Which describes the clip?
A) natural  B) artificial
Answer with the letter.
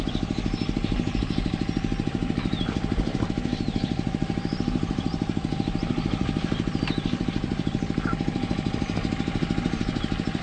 B